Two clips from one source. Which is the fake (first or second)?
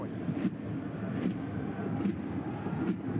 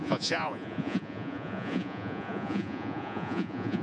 second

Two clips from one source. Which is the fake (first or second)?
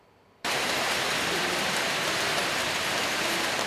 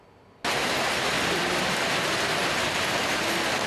first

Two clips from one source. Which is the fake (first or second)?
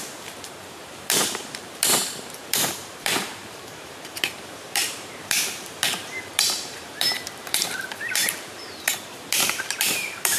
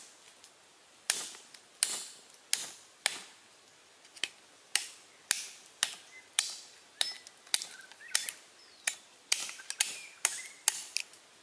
first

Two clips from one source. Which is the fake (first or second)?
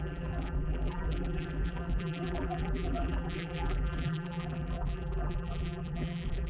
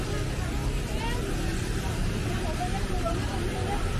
first